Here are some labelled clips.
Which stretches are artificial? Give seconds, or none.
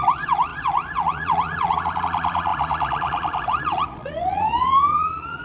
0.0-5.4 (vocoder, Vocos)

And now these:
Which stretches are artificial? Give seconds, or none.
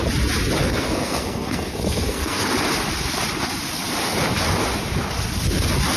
0.6-2.5 (codec, SNAC)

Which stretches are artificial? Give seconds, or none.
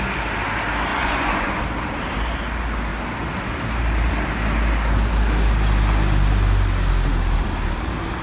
0.9-1.6 (vocoder, Vocos)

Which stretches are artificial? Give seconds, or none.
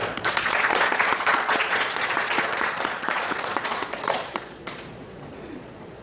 0.0-6.0 (vocoder, Vocos)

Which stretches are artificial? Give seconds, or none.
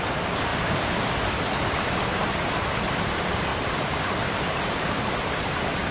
none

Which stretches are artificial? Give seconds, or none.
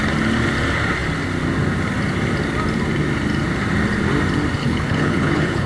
4.6-5.7 (codec, HILCodec)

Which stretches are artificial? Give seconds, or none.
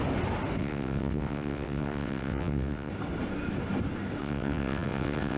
0.6-2.9 (vocoder, WaveNeXt); 4.2-5.4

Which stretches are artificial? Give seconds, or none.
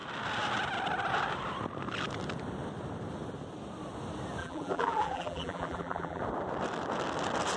4.4-6.2 (vocoder, BigVGAN v2)